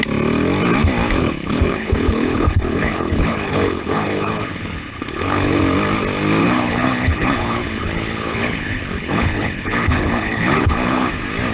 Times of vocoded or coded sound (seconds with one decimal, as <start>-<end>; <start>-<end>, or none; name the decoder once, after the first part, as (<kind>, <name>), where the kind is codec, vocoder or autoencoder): 1.2-5.6 (codec, HILCodec); 6.4-11.1